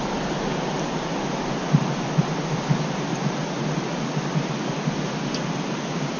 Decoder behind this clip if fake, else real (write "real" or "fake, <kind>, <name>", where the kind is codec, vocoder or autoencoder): real